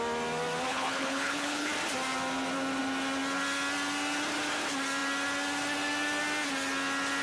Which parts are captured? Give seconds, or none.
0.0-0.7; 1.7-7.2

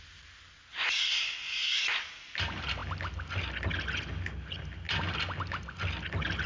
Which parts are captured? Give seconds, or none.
0.0-6.5

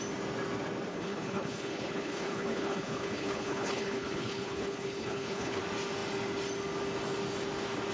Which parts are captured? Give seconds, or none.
0.0-0.9; 5.6-7.9

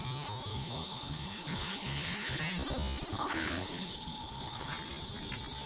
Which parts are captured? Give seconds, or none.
0.0-0.5; 2.4-3.1; 4.7-5.7

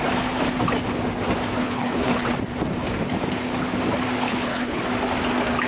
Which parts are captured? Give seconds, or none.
0.0-1.6; 2.2-4.3; 4.8-5.7

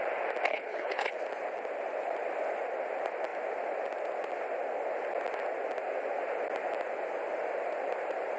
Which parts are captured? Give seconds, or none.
0.0-0.5; 1.1-8.4

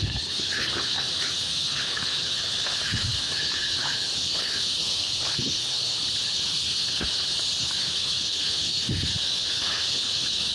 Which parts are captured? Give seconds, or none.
none